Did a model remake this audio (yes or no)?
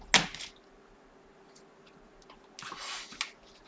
no